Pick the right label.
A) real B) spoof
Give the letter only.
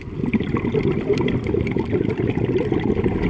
A